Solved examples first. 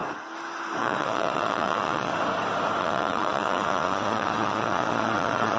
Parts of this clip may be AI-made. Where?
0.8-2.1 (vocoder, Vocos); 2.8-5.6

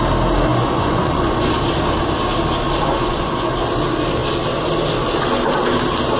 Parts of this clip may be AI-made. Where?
0.5-1.5 (vocoder, Vocos); 2.8-3.5

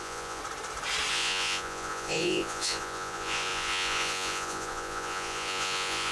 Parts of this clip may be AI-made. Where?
0.0-0.4 (vocoder, Vocos); 1.1-6.1

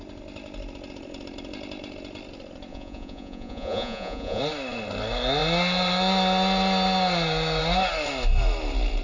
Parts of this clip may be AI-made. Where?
2.7-4.4 (vocoder, Vocos)